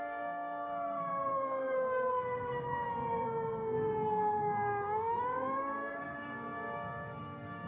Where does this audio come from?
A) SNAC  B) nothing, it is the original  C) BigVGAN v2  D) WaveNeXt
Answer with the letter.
A